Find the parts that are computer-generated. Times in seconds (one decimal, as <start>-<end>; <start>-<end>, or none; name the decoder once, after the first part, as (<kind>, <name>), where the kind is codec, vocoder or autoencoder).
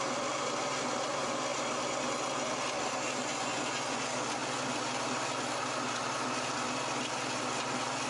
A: 3.3-4.0 (vocoder, Vocos)